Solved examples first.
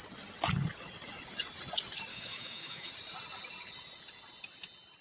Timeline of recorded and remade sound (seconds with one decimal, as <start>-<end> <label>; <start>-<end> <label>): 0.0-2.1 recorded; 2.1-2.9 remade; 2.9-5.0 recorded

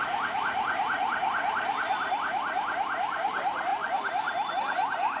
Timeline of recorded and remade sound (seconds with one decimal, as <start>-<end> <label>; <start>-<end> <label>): 0.0-5.2 recorded

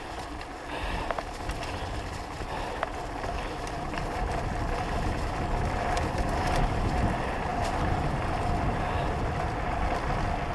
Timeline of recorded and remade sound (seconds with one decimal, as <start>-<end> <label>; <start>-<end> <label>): 0.0-10.5 recorded

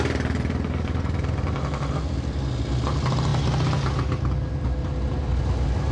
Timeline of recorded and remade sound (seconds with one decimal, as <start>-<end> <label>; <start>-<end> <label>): 0.0-5.9 recorded

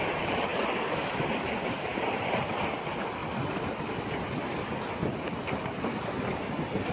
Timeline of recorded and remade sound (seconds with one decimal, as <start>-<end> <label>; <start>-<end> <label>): 0.0-1.9 recorded; 1.9-2.6 remade; 2.6-3.2 recorded; 3.2-5.8 remade; 5.8-6.9 recorded